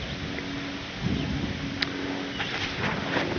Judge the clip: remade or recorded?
recorded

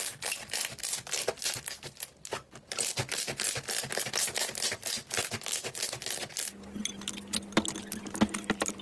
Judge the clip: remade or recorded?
recorded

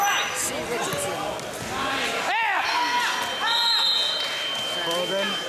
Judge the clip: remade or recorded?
recorded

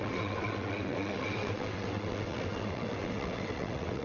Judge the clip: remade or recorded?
remade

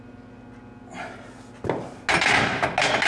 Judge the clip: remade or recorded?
recorded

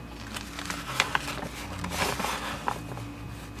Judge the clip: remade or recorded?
recorded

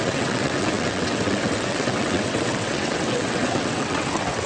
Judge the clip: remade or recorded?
remade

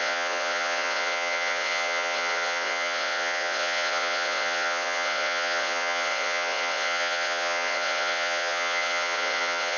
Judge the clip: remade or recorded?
remade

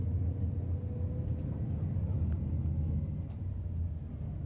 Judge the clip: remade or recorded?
recorded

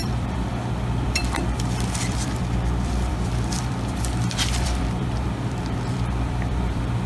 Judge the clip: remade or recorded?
remade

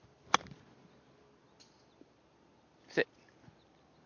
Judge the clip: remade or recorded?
recorded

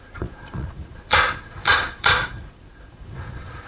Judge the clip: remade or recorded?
remade